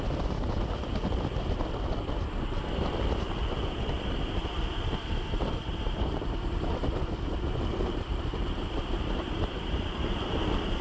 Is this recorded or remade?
remade